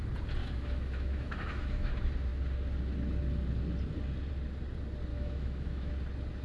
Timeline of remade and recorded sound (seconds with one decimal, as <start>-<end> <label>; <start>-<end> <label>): 0.0-0.4 recorded; 0.4-1.9 remade; 1.9-5.1 recorded; 5.1-5.9 remade; 5.9-6.4 recorded